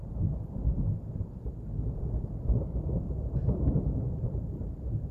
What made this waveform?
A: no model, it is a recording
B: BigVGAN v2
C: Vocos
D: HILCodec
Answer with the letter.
B